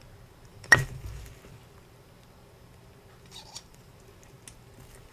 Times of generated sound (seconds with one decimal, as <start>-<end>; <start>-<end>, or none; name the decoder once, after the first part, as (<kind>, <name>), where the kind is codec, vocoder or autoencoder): 0.5-1.3 (vocoder, BigVGAN v2); 3.3-3.9